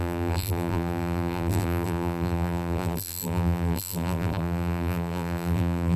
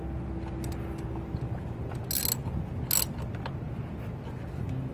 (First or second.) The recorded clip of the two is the second